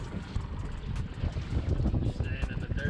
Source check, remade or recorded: recorded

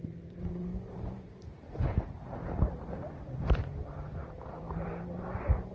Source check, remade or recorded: remade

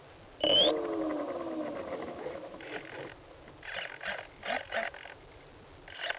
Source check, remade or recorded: recorded